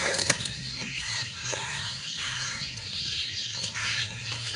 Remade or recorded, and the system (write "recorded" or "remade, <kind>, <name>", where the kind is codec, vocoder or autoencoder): remade, codec, SNAC